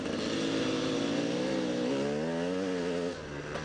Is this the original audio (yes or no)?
yes